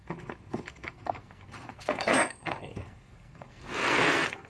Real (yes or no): no